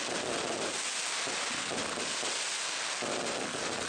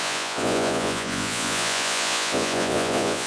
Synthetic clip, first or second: second